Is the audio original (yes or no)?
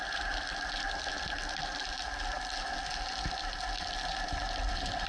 yes